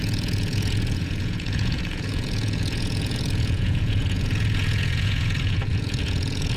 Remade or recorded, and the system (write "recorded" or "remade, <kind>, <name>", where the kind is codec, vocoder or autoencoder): remade, vocoder, Vocos